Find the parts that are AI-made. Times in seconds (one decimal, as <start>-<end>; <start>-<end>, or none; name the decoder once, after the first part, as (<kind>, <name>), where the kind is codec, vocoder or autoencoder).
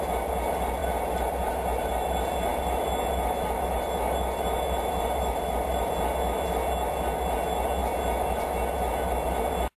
0.8-1.9 (vocoder, BigVGAN v2); 2.5-5.9; 7.8-8.5